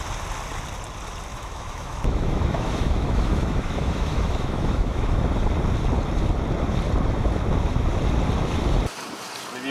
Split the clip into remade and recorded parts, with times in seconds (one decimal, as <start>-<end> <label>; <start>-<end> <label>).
0.0-1.3 recorded; 1.3-5.2 remade; 5.2-9.7 recorded